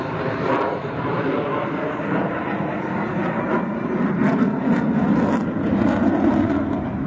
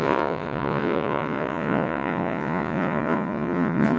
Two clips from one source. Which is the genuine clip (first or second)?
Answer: first